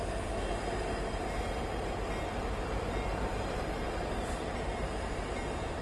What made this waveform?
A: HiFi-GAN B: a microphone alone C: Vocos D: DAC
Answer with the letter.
B